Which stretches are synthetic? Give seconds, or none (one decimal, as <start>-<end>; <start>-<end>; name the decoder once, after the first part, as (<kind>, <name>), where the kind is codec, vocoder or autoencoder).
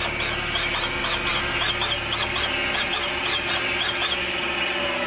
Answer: none